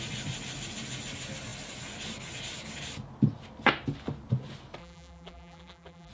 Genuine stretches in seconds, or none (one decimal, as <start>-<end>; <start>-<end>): 0.0-4.8